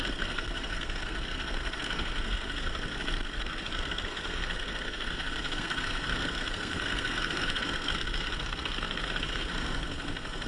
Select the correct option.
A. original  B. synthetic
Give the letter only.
B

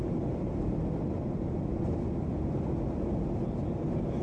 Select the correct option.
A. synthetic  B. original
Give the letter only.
B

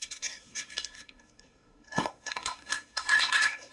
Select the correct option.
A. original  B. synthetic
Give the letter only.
B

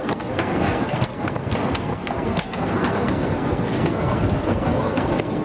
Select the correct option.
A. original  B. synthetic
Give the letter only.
B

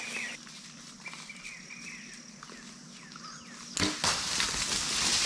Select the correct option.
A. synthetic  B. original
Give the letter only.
B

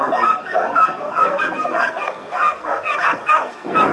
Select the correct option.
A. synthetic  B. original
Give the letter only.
A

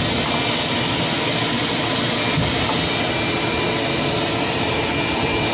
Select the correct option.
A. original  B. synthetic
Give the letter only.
A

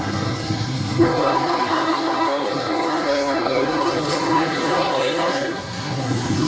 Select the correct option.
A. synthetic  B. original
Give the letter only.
A